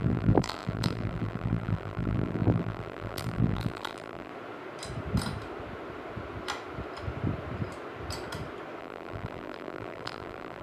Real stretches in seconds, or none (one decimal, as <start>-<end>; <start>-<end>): 4.3-8.8